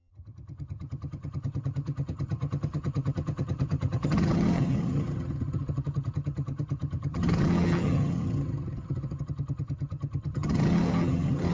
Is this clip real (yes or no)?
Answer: no